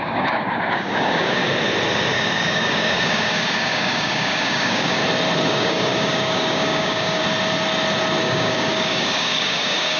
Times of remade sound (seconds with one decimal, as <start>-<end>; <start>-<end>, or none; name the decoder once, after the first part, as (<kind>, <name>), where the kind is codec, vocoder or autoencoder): 0.0-1.4 (codec, DAC); 2.1-5.0; 5.5-7.2; 8.2-10.0